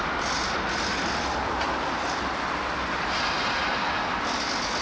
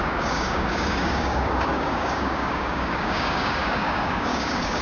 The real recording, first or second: first